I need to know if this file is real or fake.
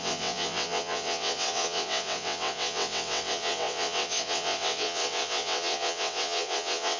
fake